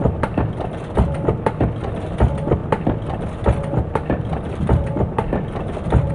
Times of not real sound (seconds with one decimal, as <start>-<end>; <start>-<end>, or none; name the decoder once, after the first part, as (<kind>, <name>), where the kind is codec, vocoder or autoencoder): none